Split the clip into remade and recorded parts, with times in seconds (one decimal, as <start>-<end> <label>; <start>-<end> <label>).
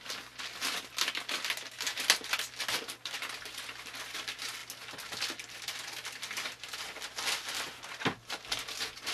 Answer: 0.0-9.1 recorded